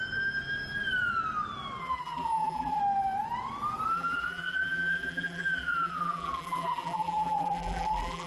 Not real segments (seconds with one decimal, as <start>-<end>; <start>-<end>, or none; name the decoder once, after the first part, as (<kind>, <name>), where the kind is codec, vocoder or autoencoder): 1.8-2.8 (vocoder, BigVGAN v2); 3.9-8.3